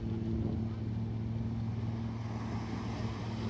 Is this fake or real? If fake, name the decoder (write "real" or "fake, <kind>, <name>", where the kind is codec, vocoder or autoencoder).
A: real